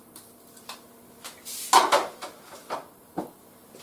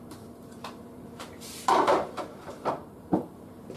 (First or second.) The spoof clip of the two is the second